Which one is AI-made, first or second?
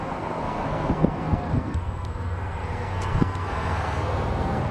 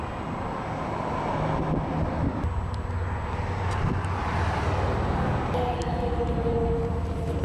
first